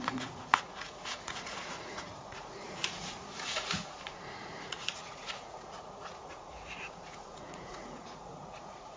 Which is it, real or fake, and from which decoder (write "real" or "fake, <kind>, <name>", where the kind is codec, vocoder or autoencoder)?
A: fake, vocoder, Vocos